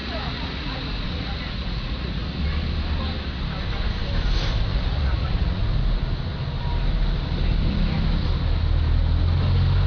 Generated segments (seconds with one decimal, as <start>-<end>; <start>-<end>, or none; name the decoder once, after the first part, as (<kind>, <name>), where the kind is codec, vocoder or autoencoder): 0.0-2.4 (vocoder, Vocos); 4.7-5.6